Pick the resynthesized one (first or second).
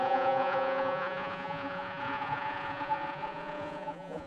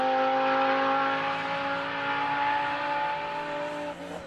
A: first